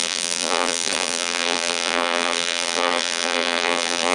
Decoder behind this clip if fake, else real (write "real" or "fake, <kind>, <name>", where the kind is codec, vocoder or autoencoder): fake, vocoder, BigVGAN v2